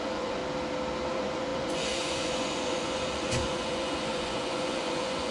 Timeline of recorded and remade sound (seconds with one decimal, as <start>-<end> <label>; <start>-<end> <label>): 0.0-0.4 remade; 0.4-1.1 recorded; 1.1-5.3 remade